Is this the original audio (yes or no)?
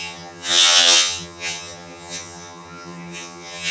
no